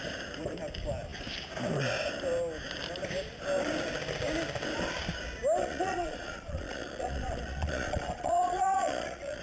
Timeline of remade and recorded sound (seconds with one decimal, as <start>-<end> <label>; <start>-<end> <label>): 0.0-5.6 recorded; 5.6-9.4 remade